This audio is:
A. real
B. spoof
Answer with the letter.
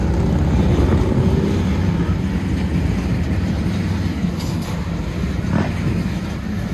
A